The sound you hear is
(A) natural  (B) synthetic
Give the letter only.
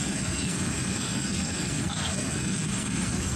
B